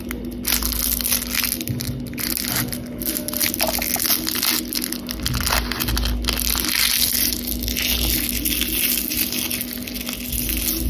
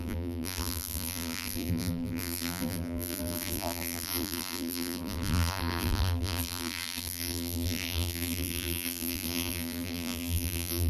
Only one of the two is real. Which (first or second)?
first